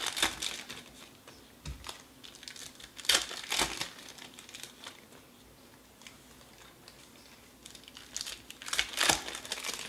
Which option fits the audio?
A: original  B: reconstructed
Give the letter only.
A